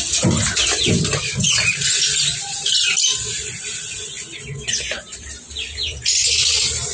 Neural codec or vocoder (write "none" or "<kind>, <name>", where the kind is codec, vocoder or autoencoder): none